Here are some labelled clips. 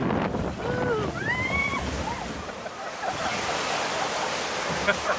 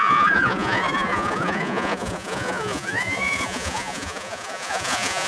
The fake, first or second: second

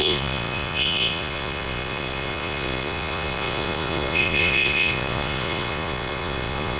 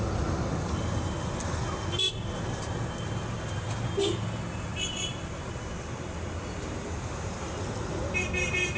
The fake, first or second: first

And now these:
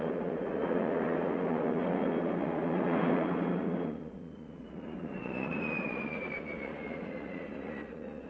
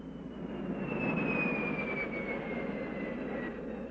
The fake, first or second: first